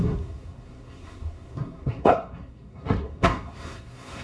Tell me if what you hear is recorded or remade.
remade